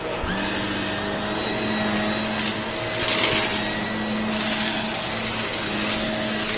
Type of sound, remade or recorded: recorded